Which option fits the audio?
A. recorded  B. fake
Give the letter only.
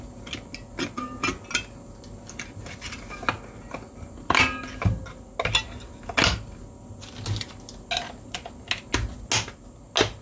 A